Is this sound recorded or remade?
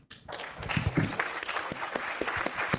recorded